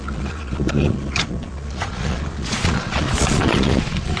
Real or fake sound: fake